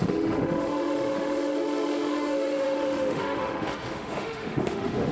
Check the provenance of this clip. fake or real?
fake